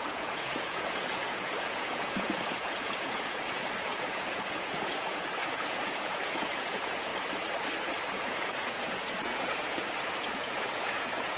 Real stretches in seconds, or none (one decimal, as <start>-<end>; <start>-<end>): 7.1-8.1

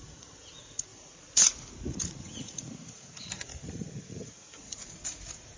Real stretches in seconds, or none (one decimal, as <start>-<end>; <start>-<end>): none

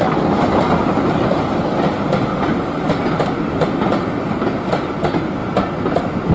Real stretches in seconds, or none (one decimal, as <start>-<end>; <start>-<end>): 0.0-6.3